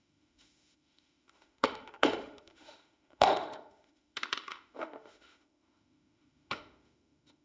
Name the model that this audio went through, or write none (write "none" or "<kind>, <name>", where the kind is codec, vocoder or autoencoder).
autoencoder, DAC-VAE